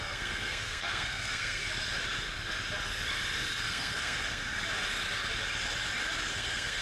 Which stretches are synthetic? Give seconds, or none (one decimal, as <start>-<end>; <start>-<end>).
0.0-1.6; 3.5-4.4; 6.3-6.8